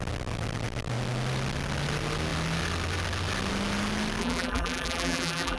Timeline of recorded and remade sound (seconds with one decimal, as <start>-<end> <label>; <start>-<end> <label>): 0.0-4.2 recorded; 4.2-5.6 remade